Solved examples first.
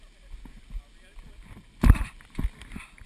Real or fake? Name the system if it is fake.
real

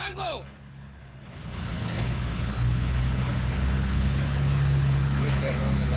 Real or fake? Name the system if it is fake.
fake, codec, HILCodec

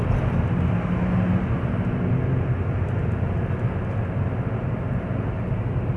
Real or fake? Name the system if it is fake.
real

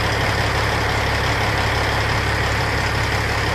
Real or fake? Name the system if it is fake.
real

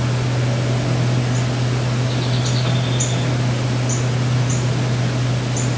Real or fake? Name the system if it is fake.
real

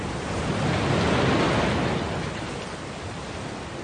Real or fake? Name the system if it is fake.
real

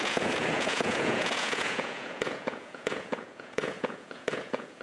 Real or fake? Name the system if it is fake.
fake, vocoder, Vocos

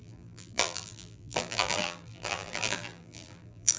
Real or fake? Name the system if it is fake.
fake, vocoder, BigVGAN v2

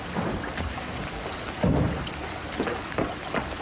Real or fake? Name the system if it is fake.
real